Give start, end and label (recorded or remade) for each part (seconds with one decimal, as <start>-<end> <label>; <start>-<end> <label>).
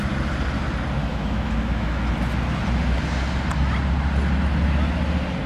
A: 0.0-1.0 recorded; 1.0-2.0 remade; 2.0-5.5 recorded